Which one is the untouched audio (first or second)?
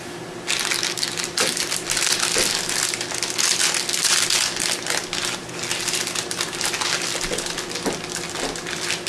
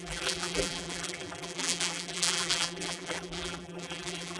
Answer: first